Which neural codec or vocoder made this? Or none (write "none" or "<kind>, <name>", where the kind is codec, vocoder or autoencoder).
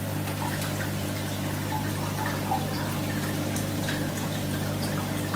vocoder, BigVGAN v2